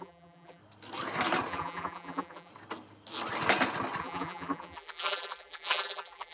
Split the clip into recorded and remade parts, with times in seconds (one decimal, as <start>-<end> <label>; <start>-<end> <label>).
0.0-0.6 remade; 0.6-1.5 recorded; 1.5-2.5 remade; 2.5-4.0 recorded; 4.0-6.3 remade